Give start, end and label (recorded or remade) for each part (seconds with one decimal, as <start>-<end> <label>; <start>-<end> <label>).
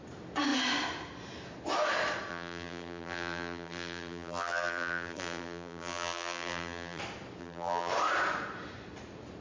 0.0-2.3 recorded; 2.3-7.0 remade; 7.0-7.4 recorded; 7.4-7.9 remade; 7.9-9.4 recorded